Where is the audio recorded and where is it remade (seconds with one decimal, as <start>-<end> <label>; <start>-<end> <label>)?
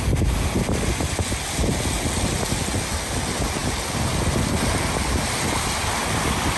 0.0-6.6 recorded